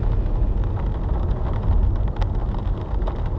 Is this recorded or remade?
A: recorded